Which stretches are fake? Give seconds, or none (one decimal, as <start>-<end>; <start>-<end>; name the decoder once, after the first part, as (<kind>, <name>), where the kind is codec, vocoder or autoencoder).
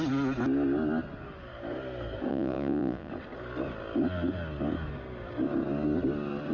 2.3-3.1 (vocoder, Vocos)